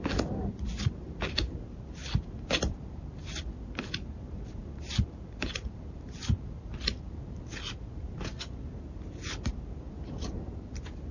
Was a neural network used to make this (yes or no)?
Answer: no